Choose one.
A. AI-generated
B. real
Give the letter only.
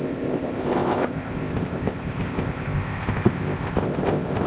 A